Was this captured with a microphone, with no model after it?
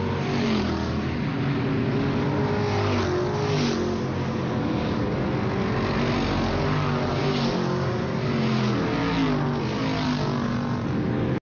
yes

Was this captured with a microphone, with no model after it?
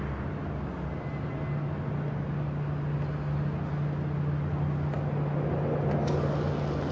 yes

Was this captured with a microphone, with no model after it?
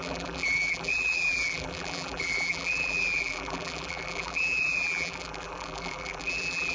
no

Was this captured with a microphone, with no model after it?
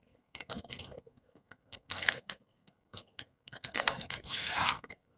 no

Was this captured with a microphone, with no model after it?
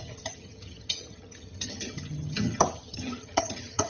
no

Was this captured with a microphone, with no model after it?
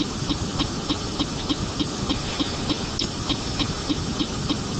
yes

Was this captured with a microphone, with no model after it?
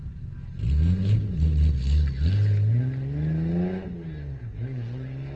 yes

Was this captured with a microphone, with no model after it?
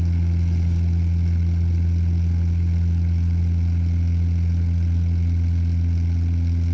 yes